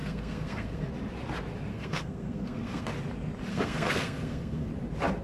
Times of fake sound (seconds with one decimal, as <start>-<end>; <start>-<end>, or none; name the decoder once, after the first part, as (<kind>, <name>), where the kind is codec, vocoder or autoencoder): 0.0-0.9 (codec, SNAC); 1.7-2.9; 3.5-4.7